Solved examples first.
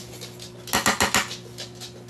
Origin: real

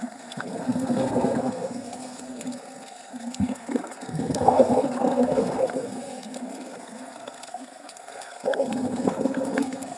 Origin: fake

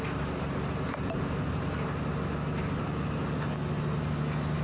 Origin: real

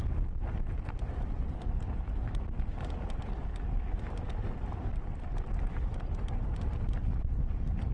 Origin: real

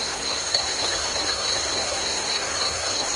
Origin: fake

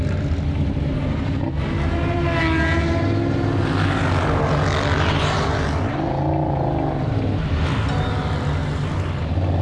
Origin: real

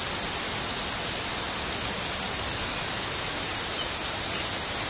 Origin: real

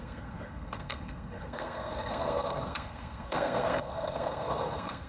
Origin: fake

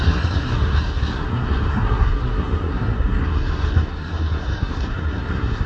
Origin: fake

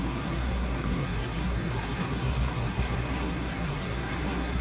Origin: fake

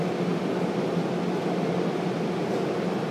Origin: real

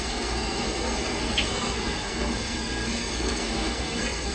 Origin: fake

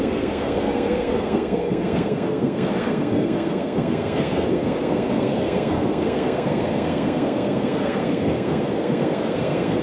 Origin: fake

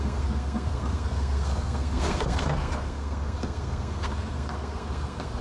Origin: fake